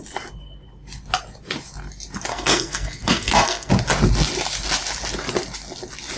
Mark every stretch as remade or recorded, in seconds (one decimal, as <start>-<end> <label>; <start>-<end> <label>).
0.0-2.3 recorded; 2.3-3.7 remade; 3.7-6.2 recorded